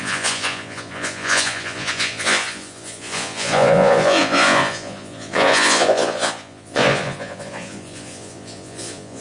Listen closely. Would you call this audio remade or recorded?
remade